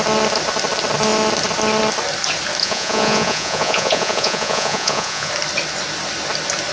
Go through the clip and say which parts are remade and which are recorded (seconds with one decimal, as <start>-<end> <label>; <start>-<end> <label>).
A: 0.0-2.6 recorded; 2.6-5.3 remade; 5.3-6.7 recorded